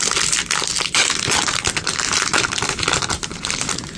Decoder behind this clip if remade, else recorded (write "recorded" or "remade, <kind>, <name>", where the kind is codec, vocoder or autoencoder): recorded